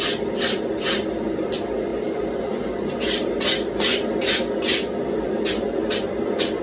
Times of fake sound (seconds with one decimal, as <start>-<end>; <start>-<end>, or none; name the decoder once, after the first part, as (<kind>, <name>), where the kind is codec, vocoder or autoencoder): none